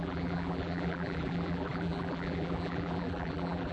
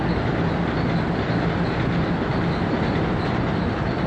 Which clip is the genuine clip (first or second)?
second